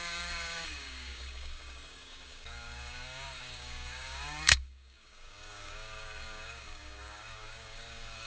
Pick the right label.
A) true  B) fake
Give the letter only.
B